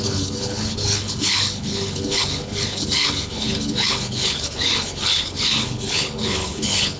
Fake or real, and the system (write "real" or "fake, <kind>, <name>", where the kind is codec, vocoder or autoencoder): fake, codec, HILCodec